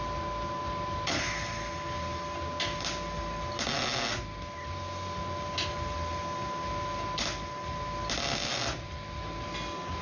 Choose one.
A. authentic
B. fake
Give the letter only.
A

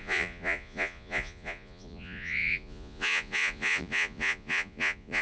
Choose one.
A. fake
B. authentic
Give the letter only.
A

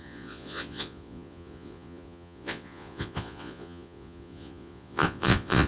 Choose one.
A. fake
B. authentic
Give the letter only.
A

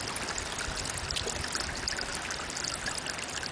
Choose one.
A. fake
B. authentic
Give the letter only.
B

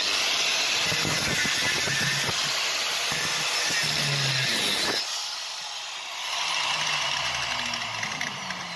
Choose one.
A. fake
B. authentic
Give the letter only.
B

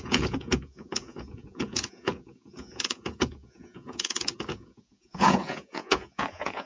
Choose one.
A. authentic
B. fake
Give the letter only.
B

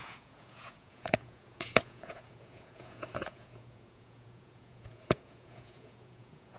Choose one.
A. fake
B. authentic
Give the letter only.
A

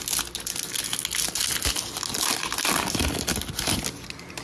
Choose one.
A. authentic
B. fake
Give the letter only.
A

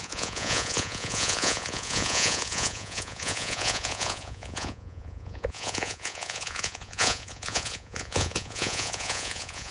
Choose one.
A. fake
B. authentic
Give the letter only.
A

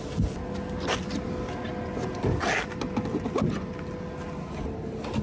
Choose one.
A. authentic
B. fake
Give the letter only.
A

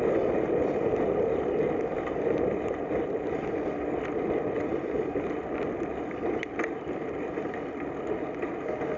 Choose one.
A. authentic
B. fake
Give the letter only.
A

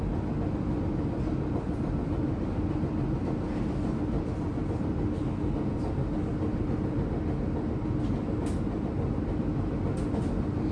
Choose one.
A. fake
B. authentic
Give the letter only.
B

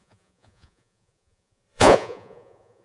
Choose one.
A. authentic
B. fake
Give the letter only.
B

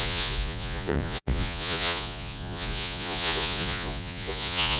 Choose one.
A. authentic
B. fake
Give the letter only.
B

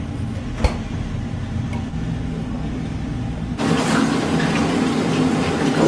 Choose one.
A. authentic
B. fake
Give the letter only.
A